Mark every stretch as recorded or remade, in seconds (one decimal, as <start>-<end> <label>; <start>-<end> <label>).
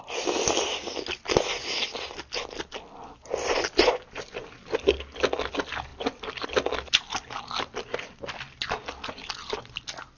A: 0.0-10.2 recorded